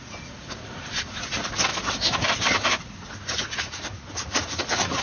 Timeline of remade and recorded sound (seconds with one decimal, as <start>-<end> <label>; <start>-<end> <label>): 0.0-1.7 remade; 1.7-3.2 recorded; 3.2-5.0 remade